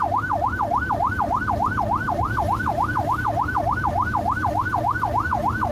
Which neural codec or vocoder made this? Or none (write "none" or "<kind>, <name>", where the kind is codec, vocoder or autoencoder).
none